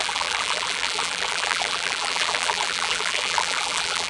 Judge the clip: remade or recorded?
remade